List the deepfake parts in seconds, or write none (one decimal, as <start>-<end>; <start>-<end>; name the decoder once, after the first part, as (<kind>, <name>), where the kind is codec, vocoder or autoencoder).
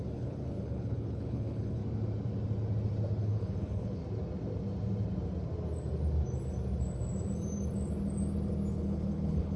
0.0-1.8 (codec, HILCodec); 3.2-4.0; 8.7-9.6